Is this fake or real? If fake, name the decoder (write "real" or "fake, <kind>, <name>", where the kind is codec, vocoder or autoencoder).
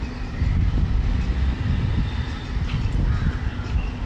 real